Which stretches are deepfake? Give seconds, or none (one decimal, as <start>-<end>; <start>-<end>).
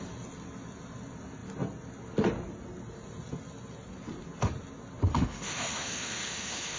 5.1-6.8